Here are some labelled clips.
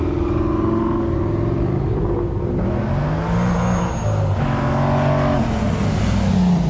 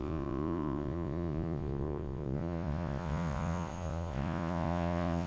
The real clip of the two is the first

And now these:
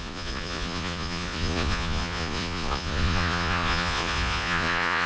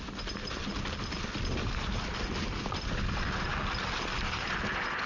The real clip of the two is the second